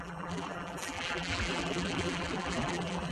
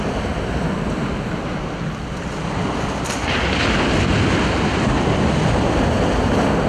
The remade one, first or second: first